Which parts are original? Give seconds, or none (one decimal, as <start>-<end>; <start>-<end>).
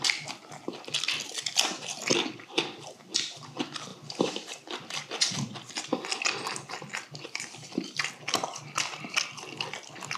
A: 0.0-3.9; 5.3-10.2